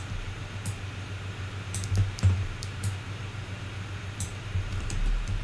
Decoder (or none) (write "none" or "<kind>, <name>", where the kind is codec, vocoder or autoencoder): vocoder, BigVGAN v2